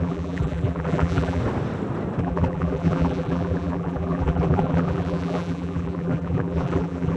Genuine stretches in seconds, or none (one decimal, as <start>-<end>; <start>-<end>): 1.4-2.2

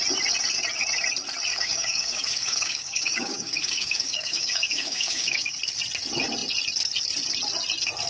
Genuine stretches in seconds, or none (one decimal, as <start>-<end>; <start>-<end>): 0.0-1.5; 5.6-8.1